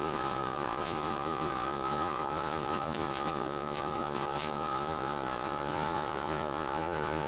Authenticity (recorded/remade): remade